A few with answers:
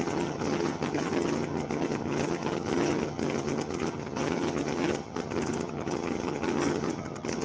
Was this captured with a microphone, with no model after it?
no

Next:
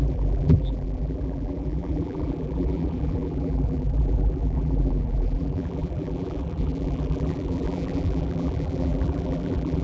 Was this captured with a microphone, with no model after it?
no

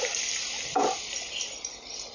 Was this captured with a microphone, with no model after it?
no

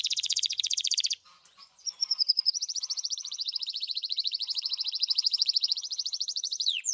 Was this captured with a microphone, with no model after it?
no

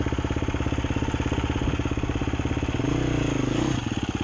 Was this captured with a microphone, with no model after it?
yes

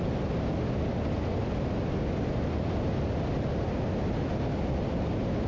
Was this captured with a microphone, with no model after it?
yes